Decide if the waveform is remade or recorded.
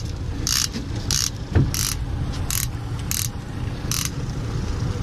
recorded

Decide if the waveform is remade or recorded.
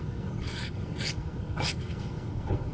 remade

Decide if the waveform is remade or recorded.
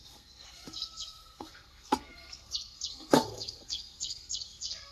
remade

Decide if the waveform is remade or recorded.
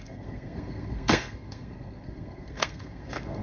remade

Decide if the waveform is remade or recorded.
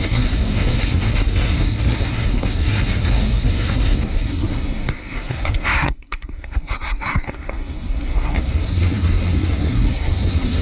remade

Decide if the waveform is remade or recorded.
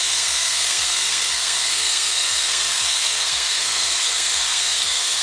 remade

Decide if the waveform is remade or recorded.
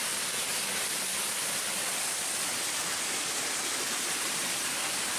recorded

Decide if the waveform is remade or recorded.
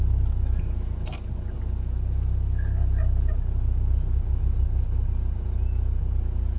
recorded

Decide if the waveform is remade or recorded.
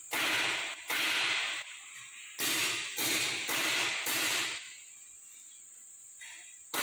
recorded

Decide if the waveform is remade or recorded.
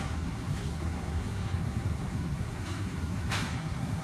remade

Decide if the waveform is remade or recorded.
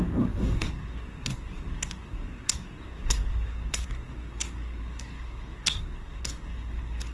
remade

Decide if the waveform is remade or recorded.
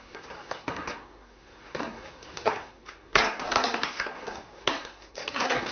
remade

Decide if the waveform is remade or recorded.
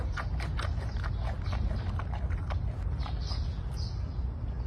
recorded